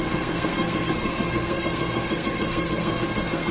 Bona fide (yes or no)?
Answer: no